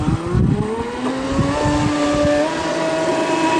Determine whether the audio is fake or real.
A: real